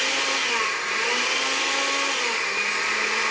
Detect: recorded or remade recorded